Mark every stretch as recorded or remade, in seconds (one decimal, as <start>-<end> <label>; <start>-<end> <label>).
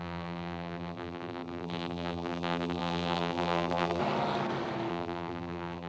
0.0-4.0 remade; 4.0-4.9 recorded; 4.9-5.9 remade